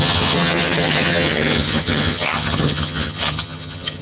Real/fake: fake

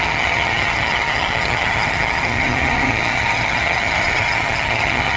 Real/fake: fake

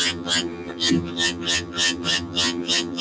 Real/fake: fake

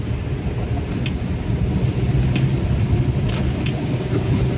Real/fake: real